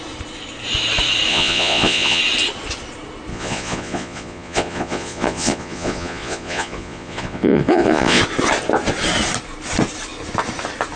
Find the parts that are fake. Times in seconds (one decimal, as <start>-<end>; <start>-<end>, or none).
1.3-2.2; 3.3-8.2